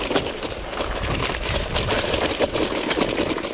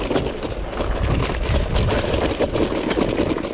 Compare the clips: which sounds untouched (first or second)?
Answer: second